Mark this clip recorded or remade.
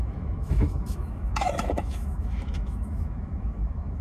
remade